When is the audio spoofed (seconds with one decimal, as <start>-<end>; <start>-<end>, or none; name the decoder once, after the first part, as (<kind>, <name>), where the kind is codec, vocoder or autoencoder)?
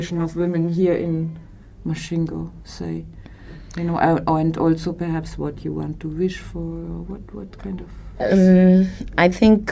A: 0.0-0.8 (codec, SNAC); 8.2-9.0